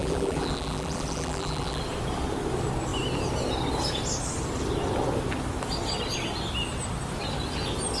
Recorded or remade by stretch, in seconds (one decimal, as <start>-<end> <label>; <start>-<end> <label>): 0.0-1.8 remade; 1.8-8.0 recorded